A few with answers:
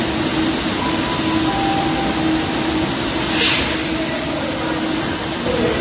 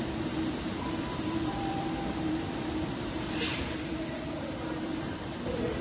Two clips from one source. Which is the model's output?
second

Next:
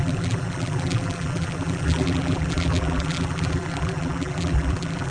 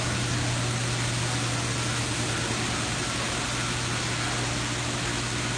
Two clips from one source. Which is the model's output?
first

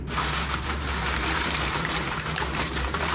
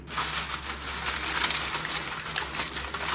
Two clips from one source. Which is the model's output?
first